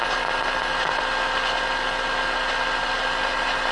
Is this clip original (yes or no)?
yes